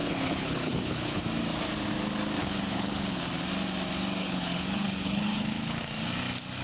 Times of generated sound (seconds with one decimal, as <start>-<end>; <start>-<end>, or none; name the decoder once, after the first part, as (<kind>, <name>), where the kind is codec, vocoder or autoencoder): 0.0-1.2 (codec, HILCodec); 2.4-3.3; 4.2-5.8